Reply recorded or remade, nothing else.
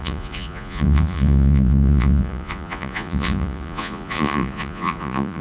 remade